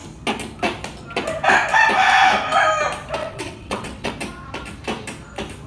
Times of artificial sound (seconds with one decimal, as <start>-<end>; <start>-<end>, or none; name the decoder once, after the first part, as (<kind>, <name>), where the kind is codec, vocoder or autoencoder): 3.2-4.1 (vocoder, WaveNeXt)